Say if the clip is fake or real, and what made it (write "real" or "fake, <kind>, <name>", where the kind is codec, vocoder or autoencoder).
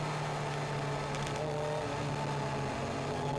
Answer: real